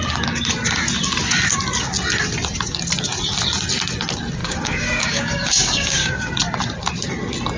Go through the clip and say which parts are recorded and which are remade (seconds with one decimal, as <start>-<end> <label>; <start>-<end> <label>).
0.0-4.4 recorded; 4.4-6.3 remade; 6.3-7.6 recorded